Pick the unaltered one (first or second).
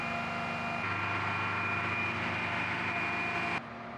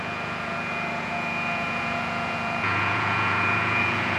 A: first